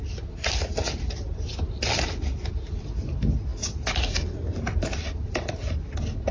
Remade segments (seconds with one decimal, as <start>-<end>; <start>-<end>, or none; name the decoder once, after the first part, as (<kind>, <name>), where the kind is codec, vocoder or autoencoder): none